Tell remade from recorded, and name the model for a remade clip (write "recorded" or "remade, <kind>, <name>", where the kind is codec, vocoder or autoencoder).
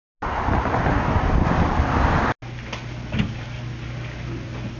recorded